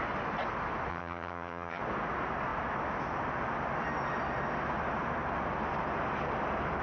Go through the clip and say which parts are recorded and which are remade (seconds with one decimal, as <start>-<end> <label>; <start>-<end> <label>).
0.0-0.9 recorded; 0.9-1.8 remade; 1.8-6.8 recorded